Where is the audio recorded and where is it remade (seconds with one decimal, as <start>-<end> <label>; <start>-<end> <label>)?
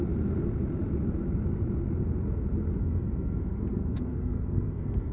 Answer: 0.0-2.8 recorded; 2.8-5.1 remade